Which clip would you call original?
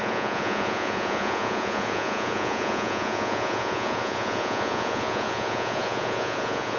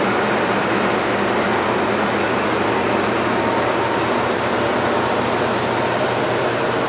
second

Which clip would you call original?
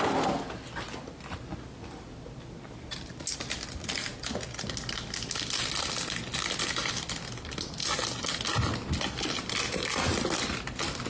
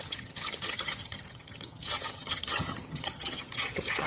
first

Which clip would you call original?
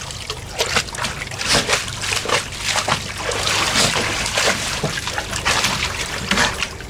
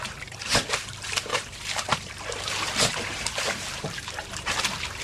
first